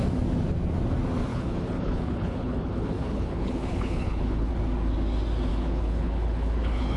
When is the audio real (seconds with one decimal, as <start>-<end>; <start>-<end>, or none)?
0.0-1.3; 4.5-5.5